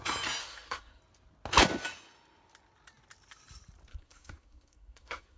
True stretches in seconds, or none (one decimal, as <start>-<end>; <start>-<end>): 0.0-0.4; 1.0-3.9